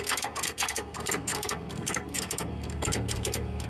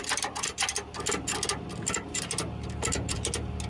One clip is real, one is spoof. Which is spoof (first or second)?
first